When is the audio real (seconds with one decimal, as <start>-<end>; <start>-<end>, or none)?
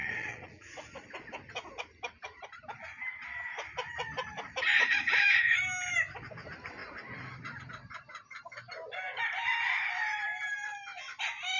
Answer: 1.0-4.6; 5.5-11.6